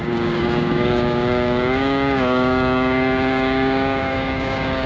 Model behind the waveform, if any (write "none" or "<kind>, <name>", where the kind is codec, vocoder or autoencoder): codec, DAC